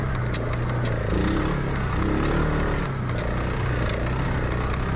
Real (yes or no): yes